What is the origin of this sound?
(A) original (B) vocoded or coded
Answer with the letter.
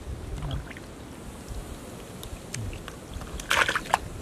A